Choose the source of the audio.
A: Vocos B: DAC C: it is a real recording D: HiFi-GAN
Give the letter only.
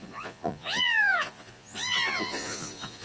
A